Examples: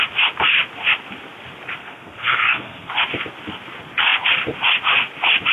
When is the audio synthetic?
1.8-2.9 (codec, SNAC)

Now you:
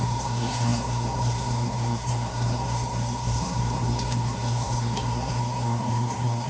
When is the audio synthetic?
0.0-6.5 (codec, SNAC)

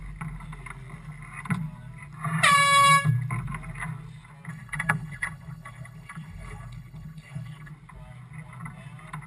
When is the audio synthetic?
4.5-7.7 (codec, HILCodec)

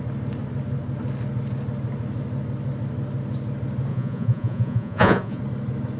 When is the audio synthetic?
3.9-5.4 (vocoder, Vocos)

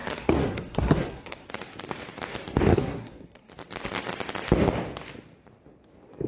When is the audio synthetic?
0.0-1.5 (codec, SNAC); 2.7-3.5